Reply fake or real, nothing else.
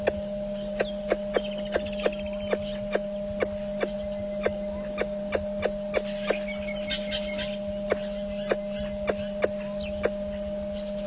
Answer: real